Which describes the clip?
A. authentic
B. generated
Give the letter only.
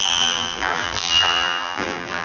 B